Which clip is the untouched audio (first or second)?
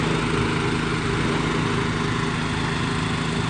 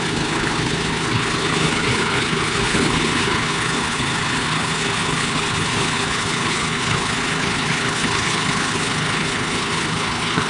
first